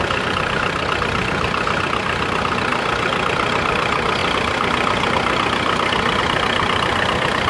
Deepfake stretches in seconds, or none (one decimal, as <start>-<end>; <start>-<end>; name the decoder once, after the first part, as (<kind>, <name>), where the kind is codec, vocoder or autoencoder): 0.0-7.5 (vocoder, BigVGAN v2)